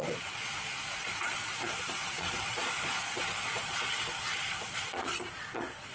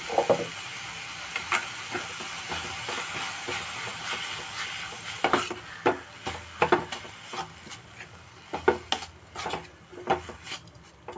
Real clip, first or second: second